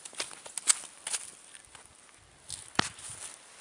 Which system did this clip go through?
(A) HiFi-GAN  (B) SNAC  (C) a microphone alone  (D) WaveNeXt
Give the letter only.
C